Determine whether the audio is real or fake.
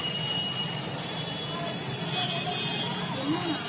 real